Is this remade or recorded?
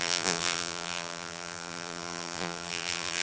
remade